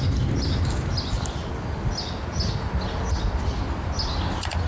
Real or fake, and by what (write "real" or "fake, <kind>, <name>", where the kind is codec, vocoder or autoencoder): real